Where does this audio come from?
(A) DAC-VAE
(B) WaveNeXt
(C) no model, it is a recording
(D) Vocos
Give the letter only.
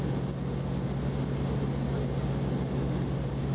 C